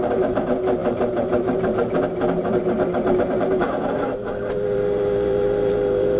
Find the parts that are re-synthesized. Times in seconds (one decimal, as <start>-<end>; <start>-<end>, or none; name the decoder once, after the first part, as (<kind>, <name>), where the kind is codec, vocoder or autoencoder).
0.0-6.2 (vocoder, BigVGAN v2)

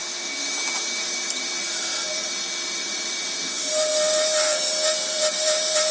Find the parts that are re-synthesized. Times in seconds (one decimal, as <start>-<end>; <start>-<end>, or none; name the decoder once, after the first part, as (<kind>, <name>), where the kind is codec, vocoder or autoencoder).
0.0-1.9 (vocoder, BigVGAN v2); 2.7-5.9